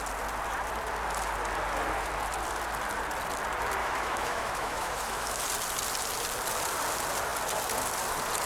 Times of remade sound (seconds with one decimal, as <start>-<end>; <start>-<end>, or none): 3.8-5.4